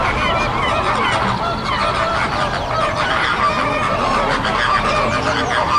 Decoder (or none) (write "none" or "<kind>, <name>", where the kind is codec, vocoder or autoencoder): vocoder, BigVGAN v2